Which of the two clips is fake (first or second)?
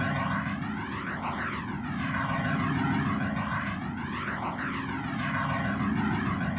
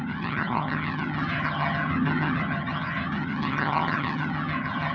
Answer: second